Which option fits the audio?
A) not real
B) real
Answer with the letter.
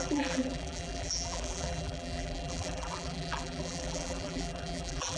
A